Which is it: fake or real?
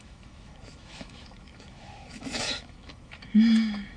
fake